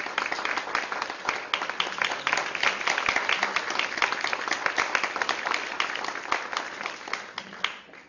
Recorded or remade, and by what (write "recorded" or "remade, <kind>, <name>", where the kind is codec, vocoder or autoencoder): recorded